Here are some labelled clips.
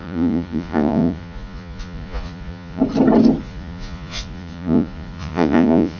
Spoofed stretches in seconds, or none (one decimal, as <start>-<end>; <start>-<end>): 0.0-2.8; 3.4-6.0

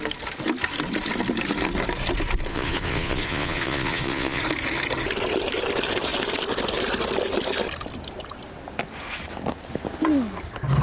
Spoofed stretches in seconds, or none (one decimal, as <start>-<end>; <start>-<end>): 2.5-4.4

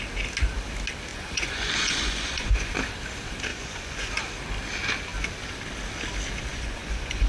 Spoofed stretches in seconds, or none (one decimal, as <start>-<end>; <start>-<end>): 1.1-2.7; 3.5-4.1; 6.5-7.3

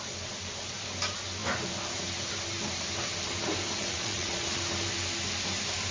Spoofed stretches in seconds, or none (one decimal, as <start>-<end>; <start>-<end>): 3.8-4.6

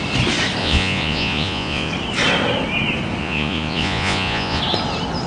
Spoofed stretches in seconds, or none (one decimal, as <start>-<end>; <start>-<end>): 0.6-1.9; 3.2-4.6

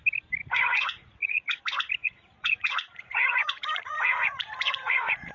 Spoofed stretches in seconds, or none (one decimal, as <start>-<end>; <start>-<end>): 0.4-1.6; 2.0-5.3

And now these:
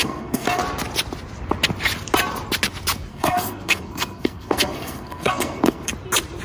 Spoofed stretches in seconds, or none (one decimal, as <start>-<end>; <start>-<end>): 0.0-0.6; 3.1-5.9

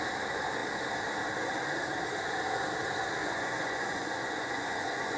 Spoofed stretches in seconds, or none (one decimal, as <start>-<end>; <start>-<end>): 3.2-5.2